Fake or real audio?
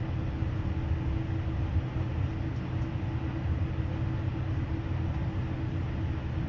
real